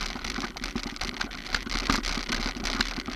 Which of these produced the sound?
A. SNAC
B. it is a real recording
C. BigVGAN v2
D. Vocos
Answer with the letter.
B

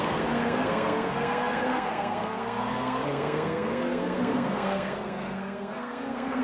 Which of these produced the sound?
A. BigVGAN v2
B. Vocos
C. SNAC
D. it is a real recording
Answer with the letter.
C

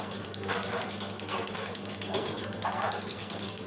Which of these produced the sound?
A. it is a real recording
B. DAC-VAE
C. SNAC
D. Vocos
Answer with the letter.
C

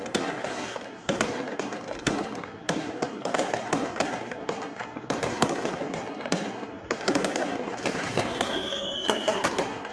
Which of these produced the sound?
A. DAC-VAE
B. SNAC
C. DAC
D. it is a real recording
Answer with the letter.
B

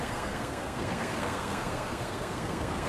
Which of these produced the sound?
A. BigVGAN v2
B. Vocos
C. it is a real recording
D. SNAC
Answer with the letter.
D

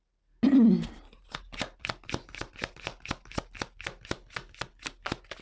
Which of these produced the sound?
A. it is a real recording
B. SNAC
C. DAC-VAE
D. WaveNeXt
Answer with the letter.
A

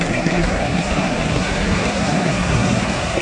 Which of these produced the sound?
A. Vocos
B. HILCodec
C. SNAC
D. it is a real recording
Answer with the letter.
C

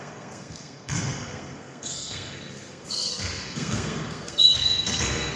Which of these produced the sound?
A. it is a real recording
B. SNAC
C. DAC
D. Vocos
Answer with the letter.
B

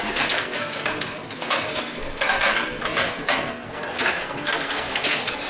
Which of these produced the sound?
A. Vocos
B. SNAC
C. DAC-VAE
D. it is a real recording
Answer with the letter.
B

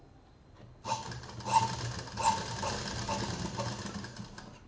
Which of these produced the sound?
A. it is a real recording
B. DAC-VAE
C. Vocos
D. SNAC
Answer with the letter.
A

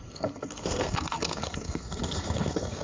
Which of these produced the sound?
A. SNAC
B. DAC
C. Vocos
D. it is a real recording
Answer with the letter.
A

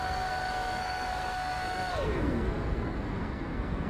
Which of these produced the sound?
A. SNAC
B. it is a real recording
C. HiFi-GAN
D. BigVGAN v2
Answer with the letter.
A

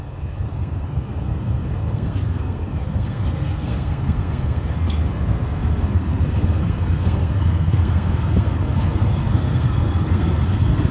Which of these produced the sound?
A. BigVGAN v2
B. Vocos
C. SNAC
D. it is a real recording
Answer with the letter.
C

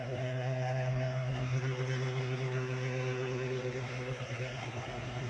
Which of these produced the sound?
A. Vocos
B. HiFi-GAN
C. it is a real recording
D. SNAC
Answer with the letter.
D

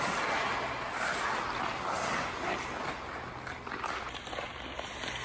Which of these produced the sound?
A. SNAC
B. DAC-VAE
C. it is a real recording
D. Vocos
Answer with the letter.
C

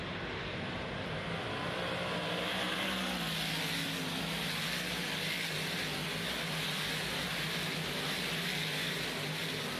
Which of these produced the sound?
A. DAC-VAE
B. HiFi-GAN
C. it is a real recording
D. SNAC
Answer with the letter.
C